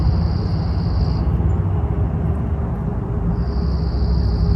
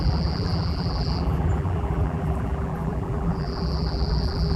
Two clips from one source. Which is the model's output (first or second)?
second